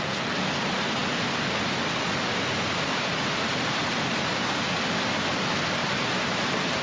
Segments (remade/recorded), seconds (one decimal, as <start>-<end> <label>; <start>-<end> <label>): 0.0-5.8 recorded; 5.8-6.8 remade